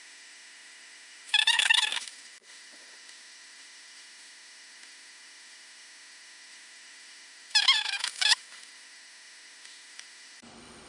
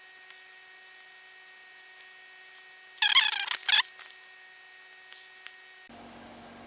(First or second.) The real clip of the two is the second